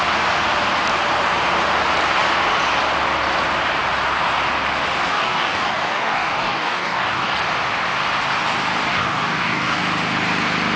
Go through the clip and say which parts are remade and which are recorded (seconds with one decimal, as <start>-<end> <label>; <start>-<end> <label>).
0.0-5.1 recorded; 5.1-7.4 remade; 7.4-8.9 recorded; 8.9-9.8 remade; 9.8-10.8 recorded